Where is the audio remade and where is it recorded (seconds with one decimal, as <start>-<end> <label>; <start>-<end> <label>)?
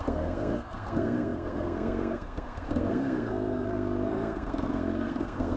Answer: 0.0-5.6 remade